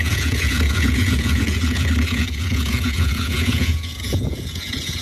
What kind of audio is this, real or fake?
fake